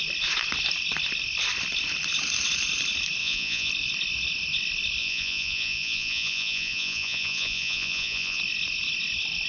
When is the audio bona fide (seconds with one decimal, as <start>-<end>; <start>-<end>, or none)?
0.0-3.2; 3.7-5.0; 8.4-9.5